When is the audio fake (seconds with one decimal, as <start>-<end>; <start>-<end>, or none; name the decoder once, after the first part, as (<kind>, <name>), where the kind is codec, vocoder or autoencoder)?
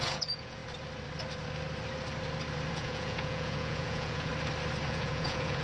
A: 0.0-0.6 (vocoder, Vocos); 2.7-4.3; 4.9-5.6